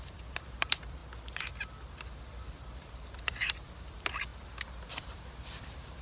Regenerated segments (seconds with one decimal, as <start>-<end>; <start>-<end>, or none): 0.0-1.0; 2.2-4.3; 5.0-6.0